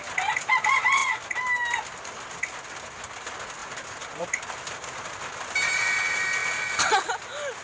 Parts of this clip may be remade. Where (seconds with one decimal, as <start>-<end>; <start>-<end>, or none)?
none